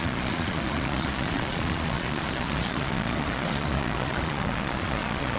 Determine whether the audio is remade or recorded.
remade